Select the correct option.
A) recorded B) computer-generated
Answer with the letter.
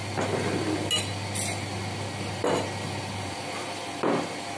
A